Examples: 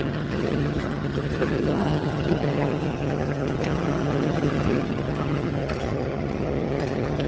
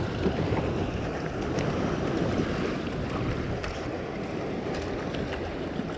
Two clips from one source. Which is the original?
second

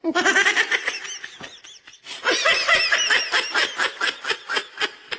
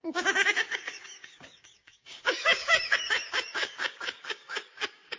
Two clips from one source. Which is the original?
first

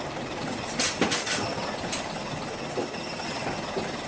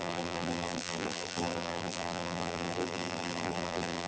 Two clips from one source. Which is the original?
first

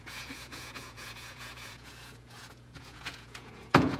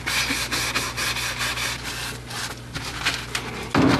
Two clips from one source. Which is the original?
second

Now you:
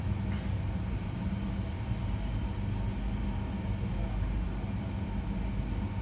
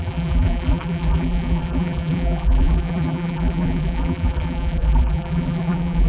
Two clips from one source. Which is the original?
first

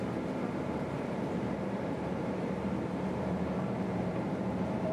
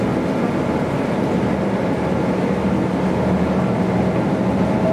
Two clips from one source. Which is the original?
second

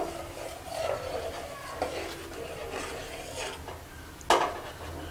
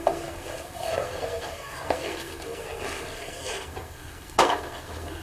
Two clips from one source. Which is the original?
first